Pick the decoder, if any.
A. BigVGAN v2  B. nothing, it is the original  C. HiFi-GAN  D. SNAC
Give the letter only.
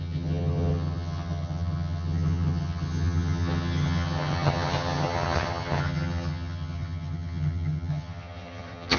C